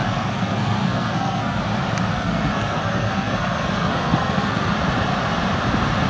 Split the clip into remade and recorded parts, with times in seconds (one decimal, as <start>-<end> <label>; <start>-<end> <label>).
0.0-1.6 remade; 1.6-2.1 recorded; 2.1-4.7 remade; 4.7-6.1 recorded